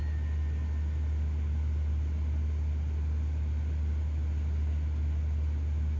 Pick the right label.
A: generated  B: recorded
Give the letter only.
B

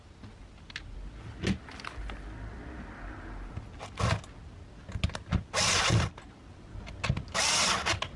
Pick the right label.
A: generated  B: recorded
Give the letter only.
B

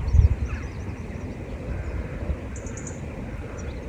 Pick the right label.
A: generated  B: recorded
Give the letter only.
B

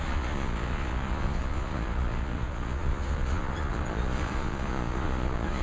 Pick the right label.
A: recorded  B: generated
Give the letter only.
B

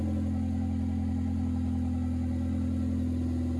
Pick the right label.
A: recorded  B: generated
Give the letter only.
A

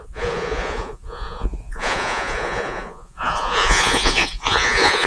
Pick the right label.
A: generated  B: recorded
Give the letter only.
A